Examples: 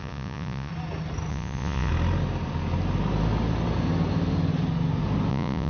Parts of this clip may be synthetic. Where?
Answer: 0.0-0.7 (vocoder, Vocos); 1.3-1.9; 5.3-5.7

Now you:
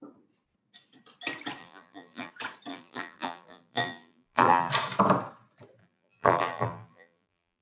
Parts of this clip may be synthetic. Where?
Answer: 1.6-2.3 (vocoder, BigVGAN v2); 2.7-4.7; 5.8-7.6

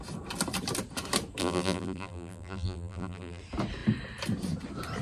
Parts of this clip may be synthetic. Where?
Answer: 1.4-3.4 (vocoder, BigVGAN v2)

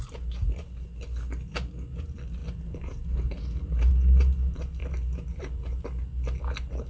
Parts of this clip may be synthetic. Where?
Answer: none

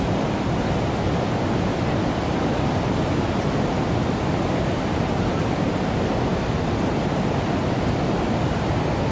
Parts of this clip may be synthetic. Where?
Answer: none

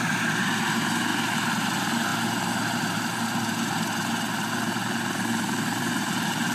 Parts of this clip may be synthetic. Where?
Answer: 0.0-1.1 (vocoder, BigVGAN v2); 1.6-6.5